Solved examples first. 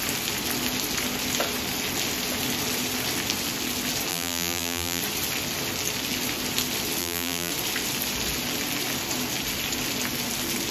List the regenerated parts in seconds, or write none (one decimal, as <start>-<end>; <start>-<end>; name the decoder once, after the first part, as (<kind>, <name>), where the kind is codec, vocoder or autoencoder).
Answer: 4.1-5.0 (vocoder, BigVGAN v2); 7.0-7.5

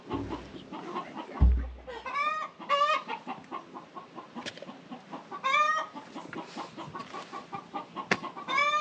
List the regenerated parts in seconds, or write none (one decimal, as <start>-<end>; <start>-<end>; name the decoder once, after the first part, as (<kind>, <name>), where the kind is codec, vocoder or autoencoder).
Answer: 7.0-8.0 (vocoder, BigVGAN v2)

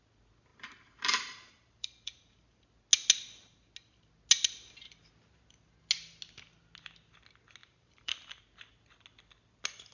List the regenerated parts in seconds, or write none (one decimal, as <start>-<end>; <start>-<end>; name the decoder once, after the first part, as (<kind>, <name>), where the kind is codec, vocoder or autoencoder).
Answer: 0.5-2.6 (vocoder, BigVGAN v2); 7.6-8.4

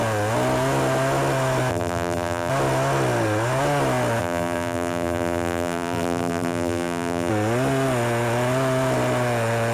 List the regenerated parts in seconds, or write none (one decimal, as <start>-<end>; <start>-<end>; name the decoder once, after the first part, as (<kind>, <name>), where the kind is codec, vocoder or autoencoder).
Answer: 1.7-2.5 (vocoder, BigVGAN v2); 4.2-7.3

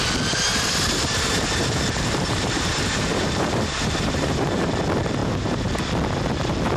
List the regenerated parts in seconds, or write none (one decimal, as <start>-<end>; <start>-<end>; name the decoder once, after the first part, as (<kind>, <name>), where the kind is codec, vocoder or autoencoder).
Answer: 0.5-4.6 (vocoder, BigVGAN v2); 5.2-5.7

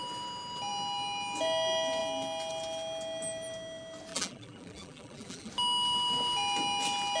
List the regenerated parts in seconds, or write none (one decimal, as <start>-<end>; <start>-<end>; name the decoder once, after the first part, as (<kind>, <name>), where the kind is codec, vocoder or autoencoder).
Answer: 4.1-5.5 (vocoder, BigVGAN v2)